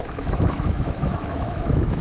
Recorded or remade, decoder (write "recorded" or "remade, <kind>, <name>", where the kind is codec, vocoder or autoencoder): remade, autoencoder, DAC-VAE